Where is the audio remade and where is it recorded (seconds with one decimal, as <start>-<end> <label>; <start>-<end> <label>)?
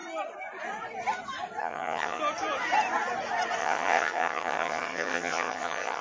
0.0-1.6 recorded; 1.6-2.2 remade; 2.2-3.6 recorded; 3.6-6.0 remade